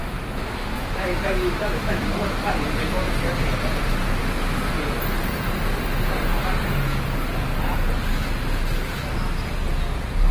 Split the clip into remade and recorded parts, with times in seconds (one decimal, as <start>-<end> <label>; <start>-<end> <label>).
0.0-2.0 remade; 2.0-10.3 recorded